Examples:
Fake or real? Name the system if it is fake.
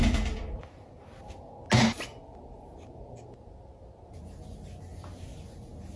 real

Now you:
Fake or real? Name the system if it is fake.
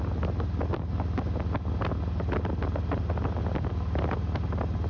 real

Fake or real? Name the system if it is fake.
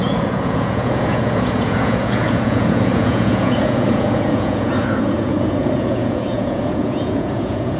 fake, vocoder, Vocos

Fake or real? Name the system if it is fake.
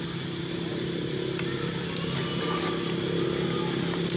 real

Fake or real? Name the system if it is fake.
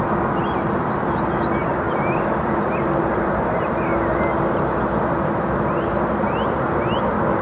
real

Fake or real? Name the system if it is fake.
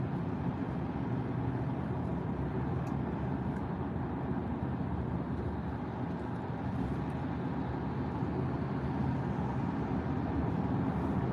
real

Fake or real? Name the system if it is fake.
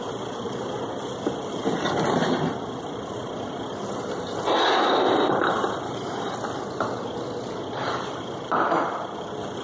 real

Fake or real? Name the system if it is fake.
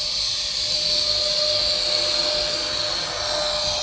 real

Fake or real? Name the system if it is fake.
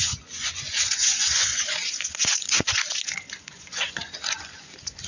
fake, vocoder, Vocos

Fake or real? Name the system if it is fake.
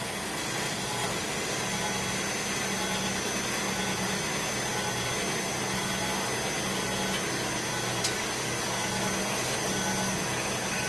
real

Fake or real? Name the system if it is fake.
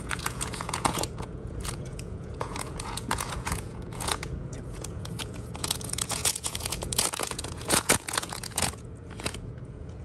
fake, vocoder, Vocos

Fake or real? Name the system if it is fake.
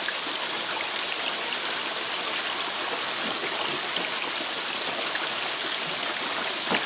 real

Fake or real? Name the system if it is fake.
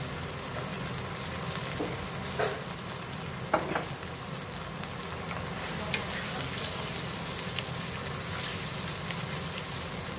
real